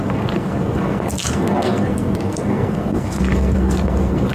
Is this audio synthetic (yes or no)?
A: yes